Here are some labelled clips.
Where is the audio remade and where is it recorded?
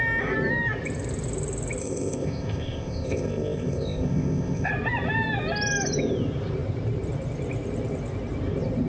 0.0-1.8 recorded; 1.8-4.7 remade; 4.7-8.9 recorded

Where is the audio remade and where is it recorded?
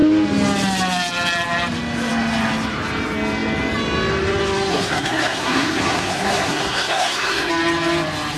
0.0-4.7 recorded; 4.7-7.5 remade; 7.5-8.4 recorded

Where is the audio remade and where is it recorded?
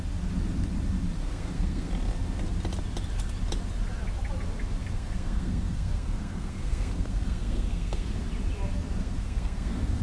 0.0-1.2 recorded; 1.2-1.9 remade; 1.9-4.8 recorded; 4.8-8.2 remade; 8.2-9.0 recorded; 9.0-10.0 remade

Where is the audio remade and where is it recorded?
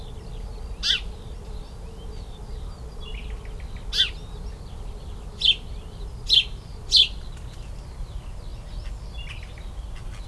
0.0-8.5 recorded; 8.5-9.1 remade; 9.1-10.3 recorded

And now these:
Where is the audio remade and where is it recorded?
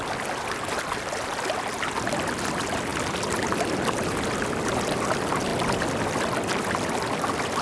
0.0-7.6 recorded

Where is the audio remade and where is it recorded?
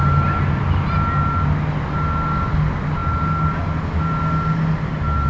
0.0-5.3 recorded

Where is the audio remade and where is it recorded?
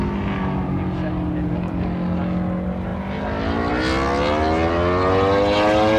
0.0-6.0 recorded